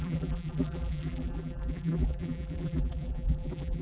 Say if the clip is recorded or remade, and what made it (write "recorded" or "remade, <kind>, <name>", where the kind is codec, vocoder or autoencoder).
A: remade, vocoder, BigVGAN v2